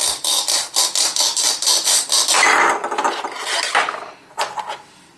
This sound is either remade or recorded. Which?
recorded